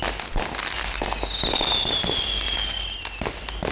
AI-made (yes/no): no